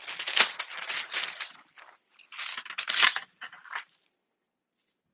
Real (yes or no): yes